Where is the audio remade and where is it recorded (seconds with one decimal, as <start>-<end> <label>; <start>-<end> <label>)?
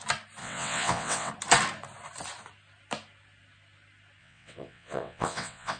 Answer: 0.0-0.4 recorded; 0.4-1.3 remade; 1.3-4.2 recorded; 4.2-5.8 remade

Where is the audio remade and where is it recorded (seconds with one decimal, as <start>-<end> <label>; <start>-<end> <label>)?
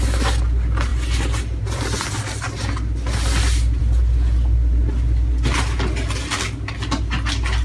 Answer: 0.0-7.6 recorded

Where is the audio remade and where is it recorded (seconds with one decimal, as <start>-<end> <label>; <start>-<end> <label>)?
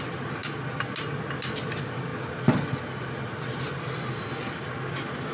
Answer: 0.0-5.3 recorded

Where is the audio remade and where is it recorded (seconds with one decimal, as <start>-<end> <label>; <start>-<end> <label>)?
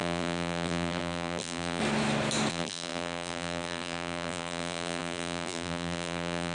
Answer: 0.0-1.8 remade; 1.8-2.5 recorded; 2.5-6.5 remade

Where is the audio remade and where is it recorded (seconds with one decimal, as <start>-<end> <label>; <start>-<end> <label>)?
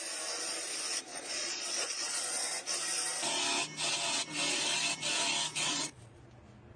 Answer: 0.0-1.1 recorded; 1.1-2.2 remade; 2.2-5.5 recorded; 5.5-6.2 remade; 6.2-6.8 recorded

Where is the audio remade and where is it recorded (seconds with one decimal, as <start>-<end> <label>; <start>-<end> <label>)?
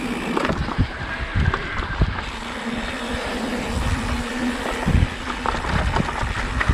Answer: 0.0-0.6 recorded; 0.6-4.6 remade; 4.6-6.7 recorded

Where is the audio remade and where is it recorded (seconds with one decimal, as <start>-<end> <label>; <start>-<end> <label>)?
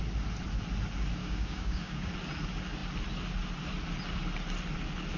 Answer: 0.0-1.2 recorded; 1.2-2.1 remade; 2.1-5.2 recorded